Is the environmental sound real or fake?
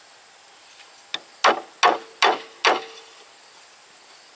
real